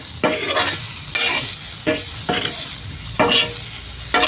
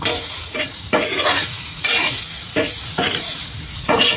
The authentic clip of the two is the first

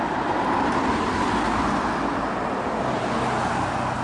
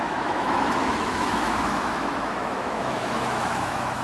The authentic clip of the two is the first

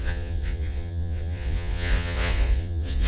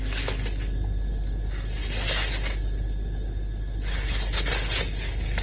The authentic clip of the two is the second